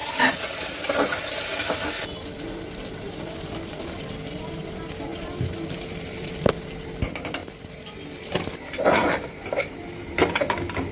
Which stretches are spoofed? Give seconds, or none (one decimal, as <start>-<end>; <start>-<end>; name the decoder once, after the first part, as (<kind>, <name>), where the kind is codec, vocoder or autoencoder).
5.1-6.7 (vocoder, BigVGAN v2); 7.4-9.7